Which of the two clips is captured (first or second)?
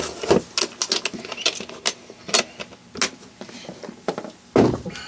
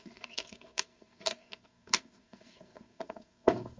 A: first